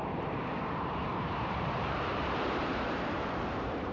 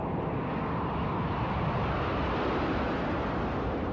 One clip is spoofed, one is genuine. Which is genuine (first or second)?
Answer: second